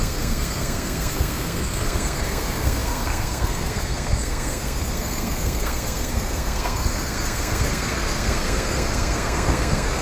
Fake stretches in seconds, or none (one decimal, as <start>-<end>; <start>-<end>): 0.0-10.0